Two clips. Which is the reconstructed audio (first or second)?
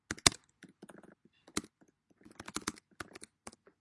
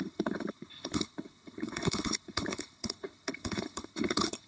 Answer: second